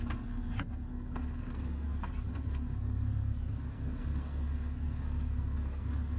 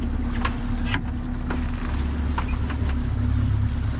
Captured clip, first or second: second